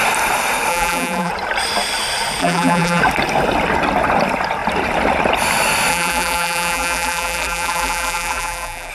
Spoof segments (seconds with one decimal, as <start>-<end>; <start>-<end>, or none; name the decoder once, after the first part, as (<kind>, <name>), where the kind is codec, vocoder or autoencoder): 0.7-1.3 (vocoder, BigVGAN v2); 2.4-3.0; 5.9-8.9